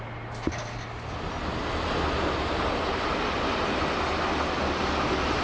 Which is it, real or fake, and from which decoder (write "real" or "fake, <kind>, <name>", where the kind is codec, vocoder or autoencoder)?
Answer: real